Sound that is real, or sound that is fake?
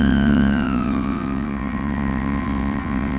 fake